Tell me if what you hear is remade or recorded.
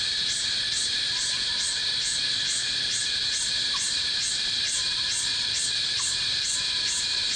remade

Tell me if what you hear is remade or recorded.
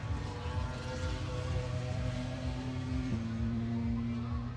recorded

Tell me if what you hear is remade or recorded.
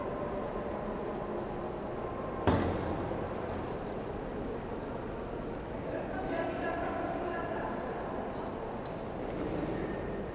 recorded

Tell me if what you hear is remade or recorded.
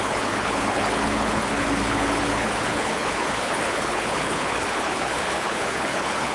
remade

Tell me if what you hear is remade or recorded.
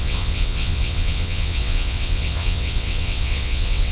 remade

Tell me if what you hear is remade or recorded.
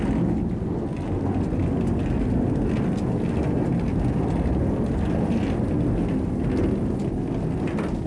recorded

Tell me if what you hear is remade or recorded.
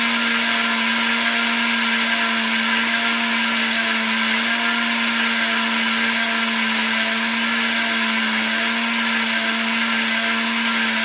recorded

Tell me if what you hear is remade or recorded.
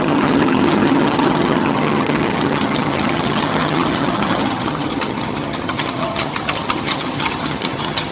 remade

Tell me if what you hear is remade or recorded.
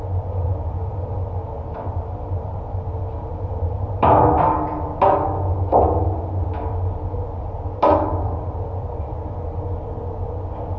recorded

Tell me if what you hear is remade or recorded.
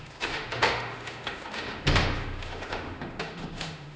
remade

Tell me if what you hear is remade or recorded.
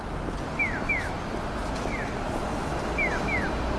recorded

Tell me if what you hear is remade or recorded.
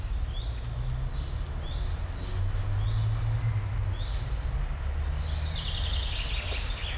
recorded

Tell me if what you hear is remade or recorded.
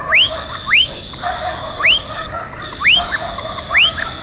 remade